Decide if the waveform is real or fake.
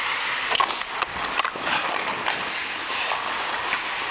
real